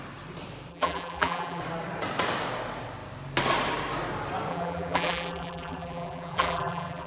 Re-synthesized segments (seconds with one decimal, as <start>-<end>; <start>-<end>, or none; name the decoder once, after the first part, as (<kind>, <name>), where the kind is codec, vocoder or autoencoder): 0.7-1.6 (vocoder, BigVGAN v2); 4.5-7.1